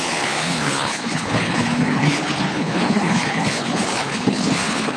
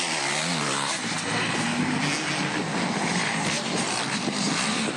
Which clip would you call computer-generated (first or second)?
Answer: first